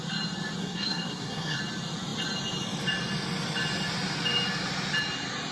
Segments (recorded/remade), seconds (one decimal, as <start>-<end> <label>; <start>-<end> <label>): 0.0-0.6 recorded; 0.6-1.6 remade; 1.6-5.5 recorded